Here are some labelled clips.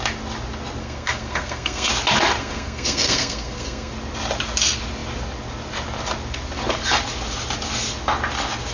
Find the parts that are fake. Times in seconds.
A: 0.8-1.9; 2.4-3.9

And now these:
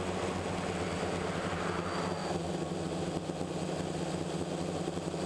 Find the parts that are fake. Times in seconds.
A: none